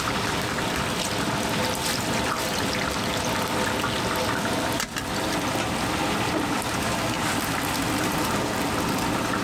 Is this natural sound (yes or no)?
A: yes